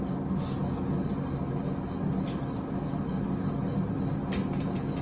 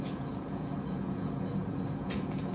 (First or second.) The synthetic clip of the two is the second